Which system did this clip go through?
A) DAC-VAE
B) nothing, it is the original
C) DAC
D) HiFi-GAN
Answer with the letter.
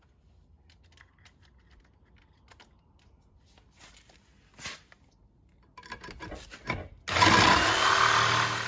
B